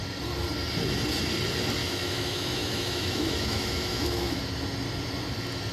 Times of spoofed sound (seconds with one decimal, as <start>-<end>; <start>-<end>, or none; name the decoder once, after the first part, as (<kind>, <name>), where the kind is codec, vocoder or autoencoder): 1.8-4.4 (autoencoder, DAC-VAE)